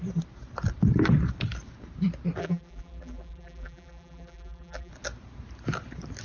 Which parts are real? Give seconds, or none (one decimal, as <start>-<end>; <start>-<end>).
0.0-2.4; 4.9-6.2